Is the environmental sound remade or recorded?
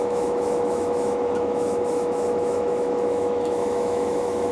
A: remade